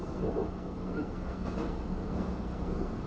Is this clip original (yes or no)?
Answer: no